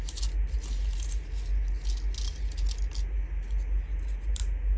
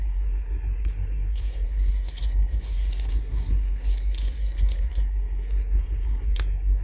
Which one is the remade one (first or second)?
second